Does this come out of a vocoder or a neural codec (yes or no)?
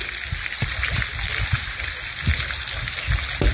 no